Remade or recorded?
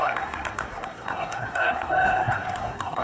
remade